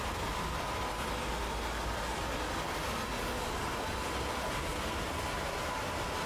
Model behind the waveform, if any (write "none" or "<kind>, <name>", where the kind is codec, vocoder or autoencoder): none